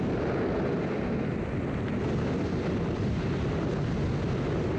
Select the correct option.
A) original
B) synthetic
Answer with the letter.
A